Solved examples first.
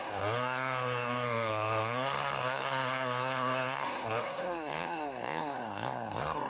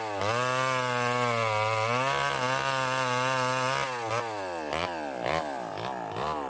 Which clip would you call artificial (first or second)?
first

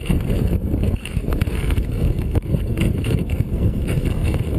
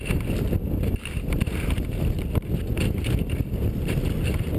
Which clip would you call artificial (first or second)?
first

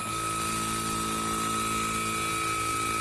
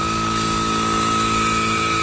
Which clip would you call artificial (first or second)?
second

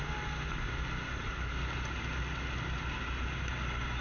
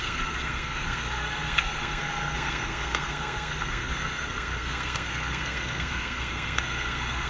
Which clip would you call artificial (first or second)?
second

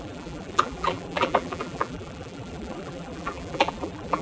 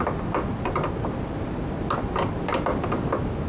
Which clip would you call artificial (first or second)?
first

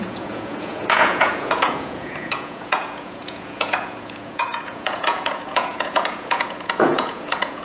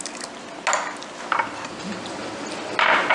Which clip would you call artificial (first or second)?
first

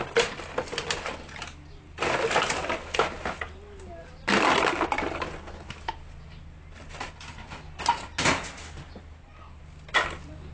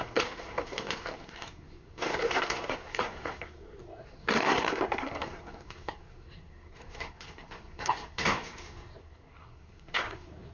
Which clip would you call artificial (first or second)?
second